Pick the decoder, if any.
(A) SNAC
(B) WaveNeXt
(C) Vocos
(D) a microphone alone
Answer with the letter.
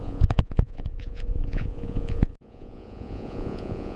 C